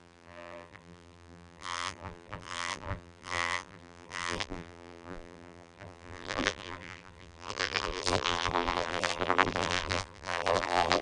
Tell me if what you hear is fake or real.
fake